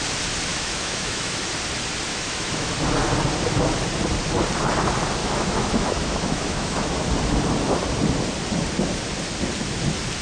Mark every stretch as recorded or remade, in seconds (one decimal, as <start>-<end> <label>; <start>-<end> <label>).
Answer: 0.0-0.5 recorded; 0.5-1.4 remade; 1.4-2.1 recorded; 2.1-2.7 remade; 2.7-5.2 recorded; 5.2-7.0 remade; 7.0-10.2 recorded